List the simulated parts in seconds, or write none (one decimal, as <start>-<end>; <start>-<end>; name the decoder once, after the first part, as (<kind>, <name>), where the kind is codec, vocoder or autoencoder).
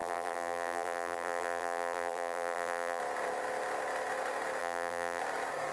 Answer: 0.0-3.0 (vocoder, BigVGAN v2); 4.6-5.2